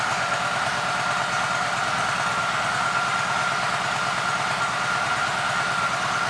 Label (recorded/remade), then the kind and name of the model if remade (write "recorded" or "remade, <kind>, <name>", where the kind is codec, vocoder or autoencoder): recorded